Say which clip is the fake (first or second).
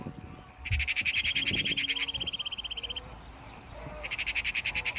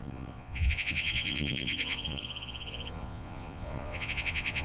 second